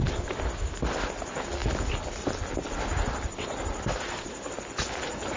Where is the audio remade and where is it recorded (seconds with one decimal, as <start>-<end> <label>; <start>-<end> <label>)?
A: 0.0-5.4 recorded